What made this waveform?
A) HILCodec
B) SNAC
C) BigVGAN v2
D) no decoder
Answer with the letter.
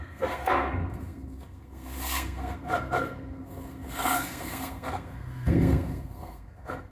B